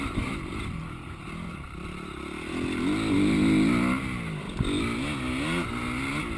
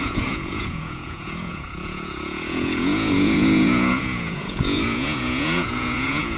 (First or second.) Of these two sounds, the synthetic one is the second